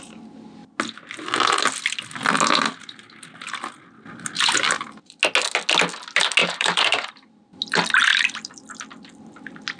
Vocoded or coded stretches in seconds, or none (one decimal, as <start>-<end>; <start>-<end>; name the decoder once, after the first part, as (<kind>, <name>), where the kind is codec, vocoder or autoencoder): 6.4-7.1 (vocoder, BigVGAN v2)

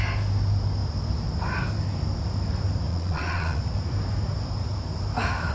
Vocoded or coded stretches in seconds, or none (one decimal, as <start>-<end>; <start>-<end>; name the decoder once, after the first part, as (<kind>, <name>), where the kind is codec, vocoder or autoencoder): 2.9-3.6 (vocoder, Vocos)

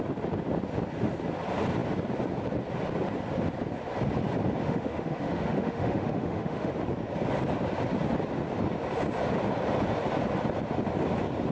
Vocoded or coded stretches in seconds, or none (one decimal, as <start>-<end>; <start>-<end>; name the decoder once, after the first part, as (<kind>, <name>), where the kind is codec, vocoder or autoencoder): 4.6-6.7 (autoencoder, DAC-VAE)

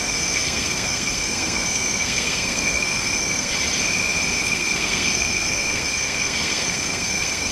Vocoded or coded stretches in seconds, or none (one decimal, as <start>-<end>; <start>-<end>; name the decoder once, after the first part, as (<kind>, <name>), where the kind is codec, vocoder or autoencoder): 0.0-3.5 (codec, SNAC); 4.4-7.5

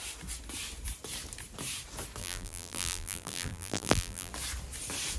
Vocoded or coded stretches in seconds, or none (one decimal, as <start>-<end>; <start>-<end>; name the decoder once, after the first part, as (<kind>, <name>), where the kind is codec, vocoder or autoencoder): 2.2-4.3 (vocoder, BigVGAN v2)

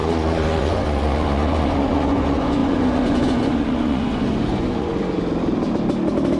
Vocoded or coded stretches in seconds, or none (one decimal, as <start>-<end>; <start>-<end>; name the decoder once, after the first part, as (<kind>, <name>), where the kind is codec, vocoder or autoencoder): 0.0-4.9 (vocoder, Vocos)